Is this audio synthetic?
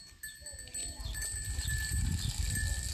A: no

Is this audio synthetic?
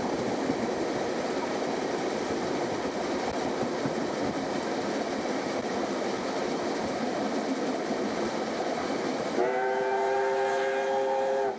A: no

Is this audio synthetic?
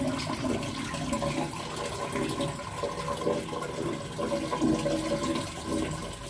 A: no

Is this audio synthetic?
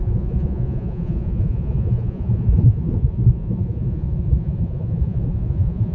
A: yes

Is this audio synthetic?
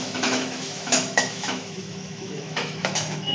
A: yes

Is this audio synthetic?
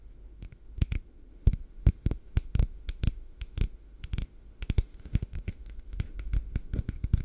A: yes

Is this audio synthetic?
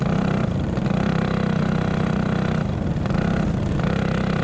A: no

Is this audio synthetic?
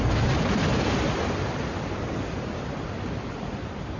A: no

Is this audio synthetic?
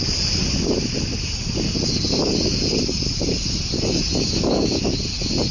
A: no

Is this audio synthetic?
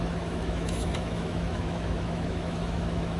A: yes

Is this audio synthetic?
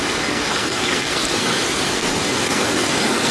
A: yes